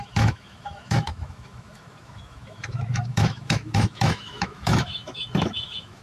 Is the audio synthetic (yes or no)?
yes